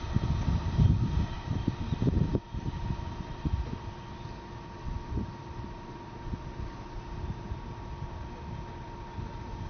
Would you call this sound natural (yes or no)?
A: yes